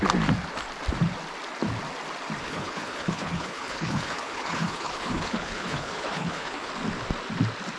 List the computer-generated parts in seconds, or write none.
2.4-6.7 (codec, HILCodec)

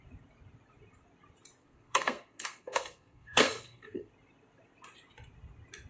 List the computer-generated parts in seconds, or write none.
1.6-4.1 (codec, SNAC)